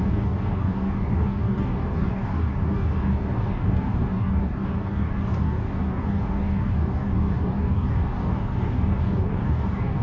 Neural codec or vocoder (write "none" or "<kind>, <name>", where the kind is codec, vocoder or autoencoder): codec, DAC